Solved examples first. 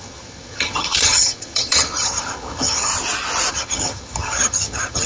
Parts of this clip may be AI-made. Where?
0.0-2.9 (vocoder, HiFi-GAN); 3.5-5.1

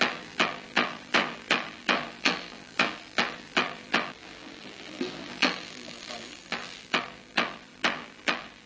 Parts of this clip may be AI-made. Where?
0.0-8.7 (vocoder, BigVGAN v2)

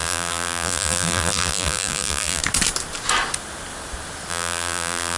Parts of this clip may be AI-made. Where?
0.0-2.4 (vocoder, BigVGAN v2); 4.3-5.2

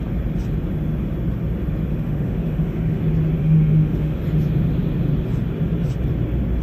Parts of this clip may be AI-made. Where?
1.9-3.0 (autoencoder, DAC-VAE); 3.4-4.2

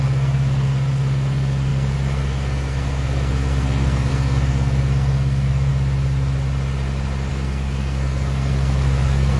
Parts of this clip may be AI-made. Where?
0.0-5.7 (codec, SNAC); 7.3-9.4